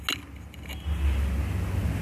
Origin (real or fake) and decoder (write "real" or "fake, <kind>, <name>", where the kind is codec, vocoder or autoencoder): real